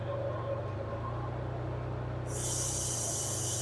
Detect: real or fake real